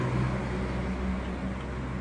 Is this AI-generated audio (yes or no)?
no